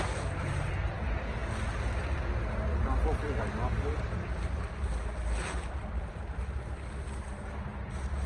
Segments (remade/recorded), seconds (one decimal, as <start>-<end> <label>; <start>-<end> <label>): 0.0-8.3 recorded